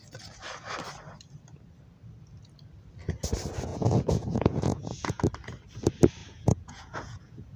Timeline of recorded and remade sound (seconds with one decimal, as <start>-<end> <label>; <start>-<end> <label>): 0.0-3.7 recorded; 3.7-5.2 remade; 5.2-6.2 recorded; 6.2-7.6 remade